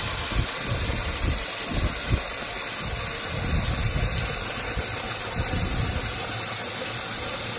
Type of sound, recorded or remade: recorded